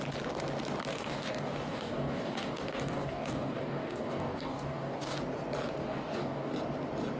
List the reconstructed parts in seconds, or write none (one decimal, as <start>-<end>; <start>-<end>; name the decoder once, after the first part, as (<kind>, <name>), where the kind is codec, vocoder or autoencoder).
0.9-5.2 (codec, DAC); 5.8-6.5